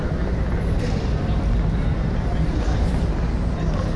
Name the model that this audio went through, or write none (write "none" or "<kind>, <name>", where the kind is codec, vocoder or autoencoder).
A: none